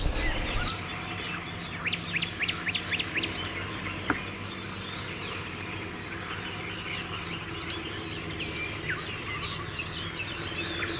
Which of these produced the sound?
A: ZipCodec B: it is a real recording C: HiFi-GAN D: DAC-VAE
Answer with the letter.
B